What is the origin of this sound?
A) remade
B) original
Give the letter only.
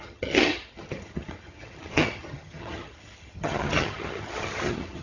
A